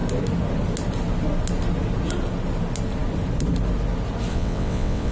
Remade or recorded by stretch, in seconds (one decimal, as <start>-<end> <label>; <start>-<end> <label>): 0.0-4.3 recorded; 4.3-5.1 remade